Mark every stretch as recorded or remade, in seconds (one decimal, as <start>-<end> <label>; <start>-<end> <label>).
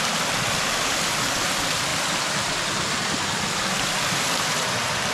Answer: 0.0-5.1 recorded